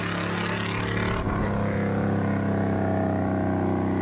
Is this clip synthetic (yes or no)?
no